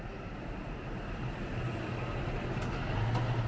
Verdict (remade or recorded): recorded